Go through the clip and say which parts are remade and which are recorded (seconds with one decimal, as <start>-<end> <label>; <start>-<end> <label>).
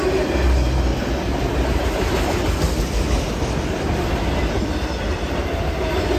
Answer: 0.0-6.2 recorded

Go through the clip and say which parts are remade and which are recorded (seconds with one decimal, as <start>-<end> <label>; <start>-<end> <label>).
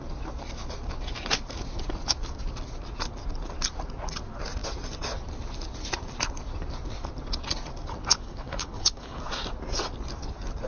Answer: 0.0-8.1 recorded; 8.1-9.2 remade; 9.2-10.7 recorded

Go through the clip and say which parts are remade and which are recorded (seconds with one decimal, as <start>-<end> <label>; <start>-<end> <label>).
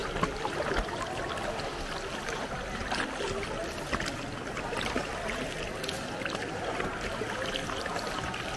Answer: 0.0-8.6 recorded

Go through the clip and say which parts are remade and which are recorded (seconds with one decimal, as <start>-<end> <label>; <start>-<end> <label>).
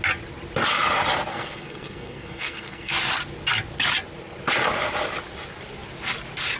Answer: 0.0-1.3 recorded; 1.3-2.9 remade; 2.9-6.6 recorded